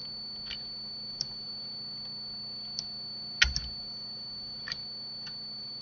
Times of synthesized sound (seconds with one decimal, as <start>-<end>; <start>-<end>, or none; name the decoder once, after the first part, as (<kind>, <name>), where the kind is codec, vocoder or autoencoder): 1.1-1.5 (vocoder, BigVGAN v2); 3.8-4.8